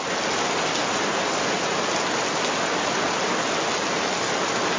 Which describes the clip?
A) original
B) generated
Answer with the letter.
A